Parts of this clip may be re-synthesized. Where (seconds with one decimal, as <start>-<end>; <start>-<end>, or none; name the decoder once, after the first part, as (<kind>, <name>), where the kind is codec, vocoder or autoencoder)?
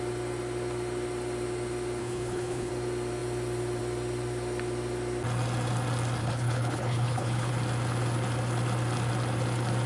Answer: 2.0-2.7 (codec, HILCodec); 6.2-7.5